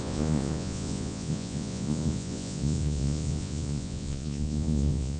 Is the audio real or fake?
fake